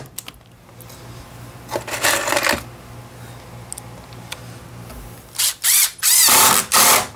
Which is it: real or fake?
real